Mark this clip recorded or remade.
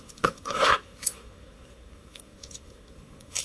remade